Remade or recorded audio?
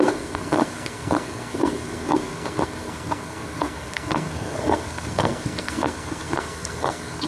remade